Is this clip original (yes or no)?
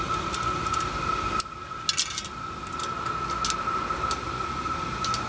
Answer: yes